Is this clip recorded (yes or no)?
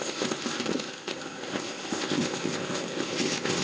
no